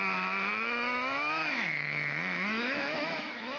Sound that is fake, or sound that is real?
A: fake